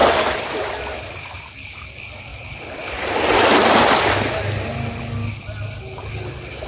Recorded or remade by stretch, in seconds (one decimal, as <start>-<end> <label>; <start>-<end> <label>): 0.0-6.7 recorded